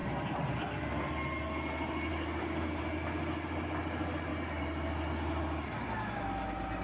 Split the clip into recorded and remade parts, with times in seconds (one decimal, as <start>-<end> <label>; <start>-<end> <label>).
0.0-2.1 recorded; 2.1-2.8 remade; 2.8-6.8 recorded